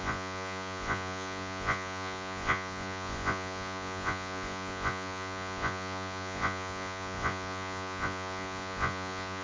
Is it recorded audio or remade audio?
remade